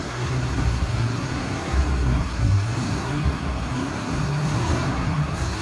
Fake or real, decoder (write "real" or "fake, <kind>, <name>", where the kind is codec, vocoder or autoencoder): fake, codec, SNAC